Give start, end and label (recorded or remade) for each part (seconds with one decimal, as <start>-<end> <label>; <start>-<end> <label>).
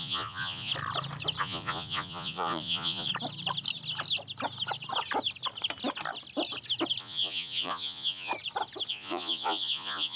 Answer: 0.0-0.7 remade; 0.7-1.4 recorded; 1.4-3.1 remade; 3.1-7.0 recorded; 7.0-8.3 remade; 8.3-8.9 recorded; 8.9-10.2 remade